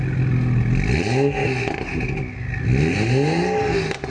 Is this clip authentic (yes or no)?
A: yes